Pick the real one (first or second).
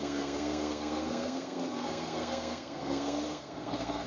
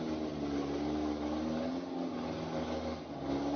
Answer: second